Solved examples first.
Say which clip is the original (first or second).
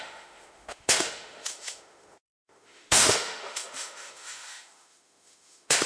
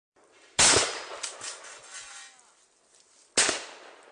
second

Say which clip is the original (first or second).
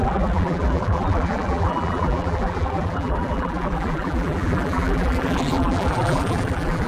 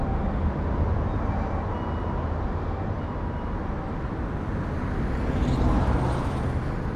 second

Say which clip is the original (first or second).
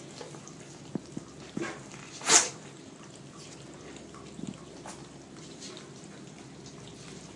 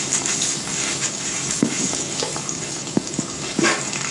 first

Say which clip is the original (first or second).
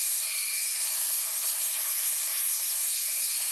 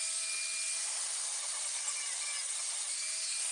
second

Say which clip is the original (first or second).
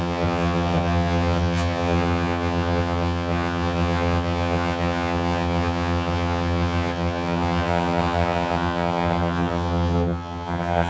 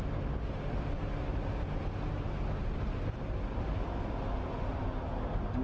second